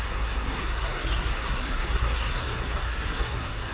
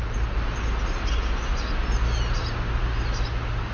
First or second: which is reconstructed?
first